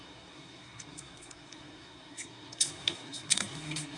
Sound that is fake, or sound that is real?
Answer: fake